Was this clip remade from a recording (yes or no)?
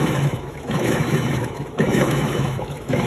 yes